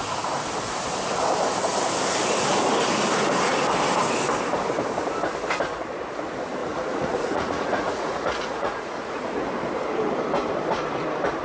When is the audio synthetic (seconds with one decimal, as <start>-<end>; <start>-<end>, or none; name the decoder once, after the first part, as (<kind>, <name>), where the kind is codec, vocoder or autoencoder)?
6.6-9.5 (vocoder, Vocos)